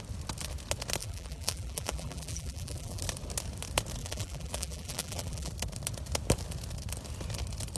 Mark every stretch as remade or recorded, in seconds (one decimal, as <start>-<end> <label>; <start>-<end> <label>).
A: 0.0-1.0 recorded; 1.0-3.0 remade; 3.0-4.0 recorded; 4.0-5.5 remade; 5.5-7.8 recorded